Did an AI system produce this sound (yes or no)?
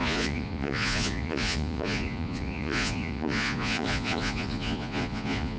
yes